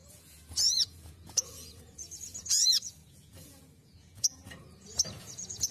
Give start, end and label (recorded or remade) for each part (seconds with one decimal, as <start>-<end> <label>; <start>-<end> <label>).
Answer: 0.0-4.4 remade; 4.4-5.2 recorded; 5.2-5.7 remade